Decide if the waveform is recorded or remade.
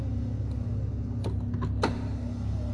recorded